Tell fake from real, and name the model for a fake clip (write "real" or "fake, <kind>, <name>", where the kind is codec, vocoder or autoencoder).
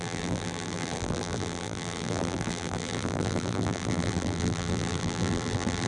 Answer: fake, vocoder, BigVGAN v2